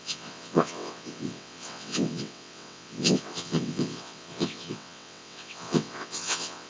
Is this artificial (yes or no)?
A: yes